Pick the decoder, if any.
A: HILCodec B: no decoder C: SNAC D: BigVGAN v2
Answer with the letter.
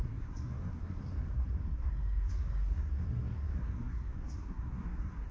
C